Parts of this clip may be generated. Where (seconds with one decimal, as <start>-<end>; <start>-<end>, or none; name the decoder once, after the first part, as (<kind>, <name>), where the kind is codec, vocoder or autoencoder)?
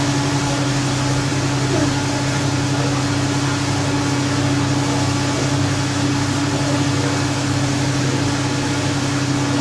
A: none